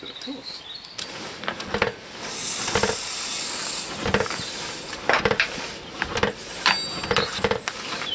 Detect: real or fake real